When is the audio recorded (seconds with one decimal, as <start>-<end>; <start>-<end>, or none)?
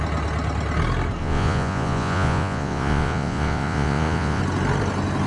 0.0-1.2; 4.4-5.3